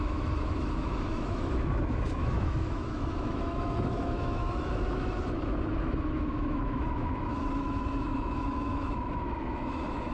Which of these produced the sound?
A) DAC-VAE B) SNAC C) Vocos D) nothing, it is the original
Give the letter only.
A